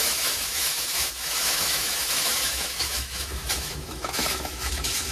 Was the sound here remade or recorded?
remade